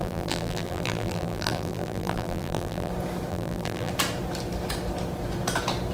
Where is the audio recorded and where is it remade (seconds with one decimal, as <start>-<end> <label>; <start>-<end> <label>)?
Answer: 0.0-2.9 remade; 2.9-3.3 recorded; 3.3-3.9 remade; 3.9-5.9 recorded